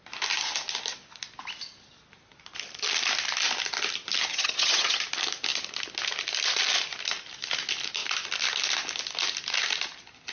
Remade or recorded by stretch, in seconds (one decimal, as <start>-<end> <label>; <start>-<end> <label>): 0.0-4.3 recorded; 4.3-5.0 remade; 5.0-10.3 recorded